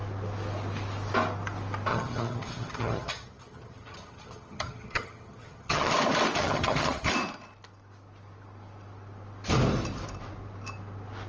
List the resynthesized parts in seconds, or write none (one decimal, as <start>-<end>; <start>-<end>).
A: 1.9-5.9; 6.4-7.1